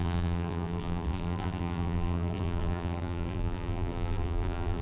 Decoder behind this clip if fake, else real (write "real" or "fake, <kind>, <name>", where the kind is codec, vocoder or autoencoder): fake, vocoder, BigVGAN v2